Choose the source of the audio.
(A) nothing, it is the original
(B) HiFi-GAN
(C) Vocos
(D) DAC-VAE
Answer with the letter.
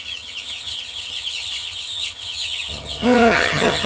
B